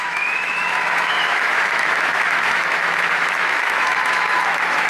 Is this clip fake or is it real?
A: fake